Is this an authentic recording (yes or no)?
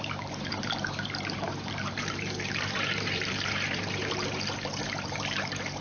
no